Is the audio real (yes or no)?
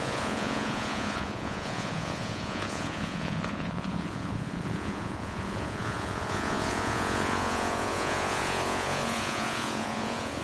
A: no